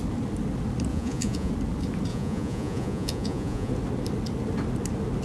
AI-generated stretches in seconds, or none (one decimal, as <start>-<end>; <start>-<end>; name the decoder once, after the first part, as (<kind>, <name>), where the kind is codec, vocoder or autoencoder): 0.9-1.5 (vocoder, Vocos); 2.1-3.7